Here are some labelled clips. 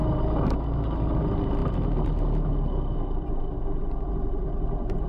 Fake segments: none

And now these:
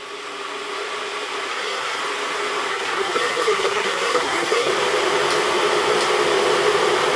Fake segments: 1.5-2.0 (codec, SNAC); 2.7-4.7

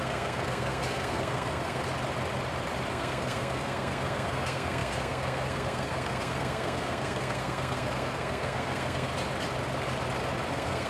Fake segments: 0.0-1.8 (codec, SNAC); 2.9-9.1; 10.5-10.9

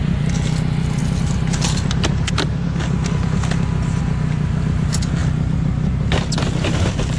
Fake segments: none

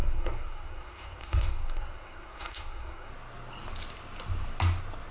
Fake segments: 0.0-3.1 (codec, SNAC)